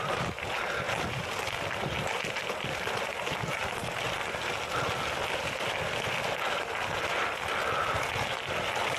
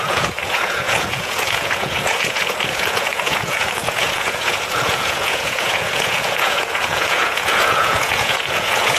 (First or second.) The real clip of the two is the first